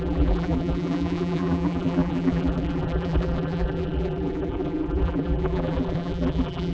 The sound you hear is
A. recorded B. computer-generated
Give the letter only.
B